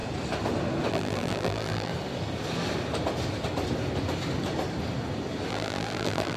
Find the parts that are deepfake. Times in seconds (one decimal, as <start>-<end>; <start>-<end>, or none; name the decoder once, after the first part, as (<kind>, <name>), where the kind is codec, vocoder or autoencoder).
0.9-1.9 (vocoder, BigVGAN v2); 5.5-6.4